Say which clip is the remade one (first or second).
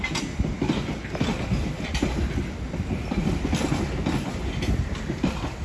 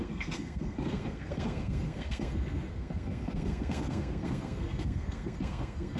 second